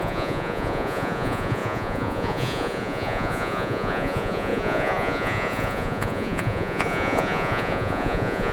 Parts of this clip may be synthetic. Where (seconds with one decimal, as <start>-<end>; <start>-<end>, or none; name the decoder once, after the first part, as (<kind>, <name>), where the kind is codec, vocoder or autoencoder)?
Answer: 0.0-8.5 (vocoder, Vocos)